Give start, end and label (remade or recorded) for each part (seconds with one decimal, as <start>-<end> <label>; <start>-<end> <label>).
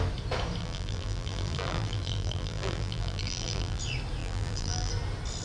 0.0-0.6 recorded; 0.6-3.8 remade; 3.8-4.2 recorded; 4.2-4.9 remade; 4.9-5.4 recorded